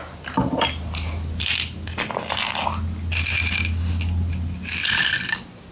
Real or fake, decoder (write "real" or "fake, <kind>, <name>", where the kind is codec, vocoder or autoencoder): real